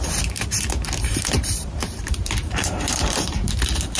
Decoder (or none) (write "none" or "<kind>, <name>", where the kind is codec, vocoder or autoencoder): vocoder, BigVGAN v2